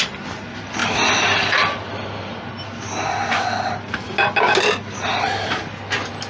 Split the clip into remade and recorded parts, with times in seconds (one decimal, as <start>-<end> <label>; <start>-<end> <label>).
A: 0.0-6.3 recorded